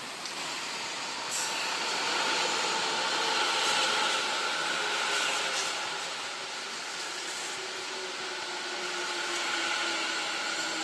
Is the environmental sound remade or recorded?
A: recorded